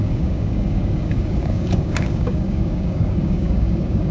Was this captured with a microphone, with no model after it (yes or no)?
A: no